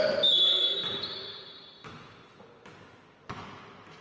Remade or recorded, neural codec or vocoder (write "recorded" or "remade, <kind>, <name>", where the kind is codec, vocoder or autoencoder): recorded